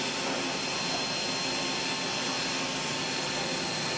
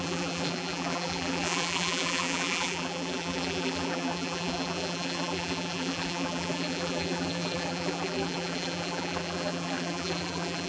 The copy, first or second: second